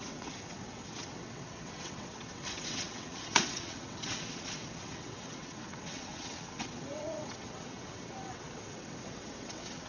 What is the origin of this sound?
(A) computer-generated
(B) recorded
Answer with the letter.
A